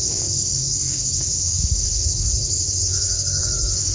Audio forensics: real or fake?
fake